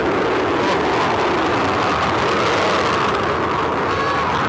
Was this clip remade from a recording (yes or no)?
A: no